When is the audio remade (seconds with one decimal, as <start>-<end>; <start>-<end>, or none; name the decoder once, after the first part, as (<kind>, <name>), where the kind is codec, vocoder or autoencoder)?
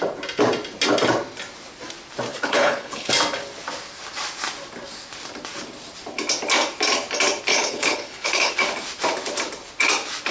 2.3-3.1 (codec, HILCodec); 7.5-8.5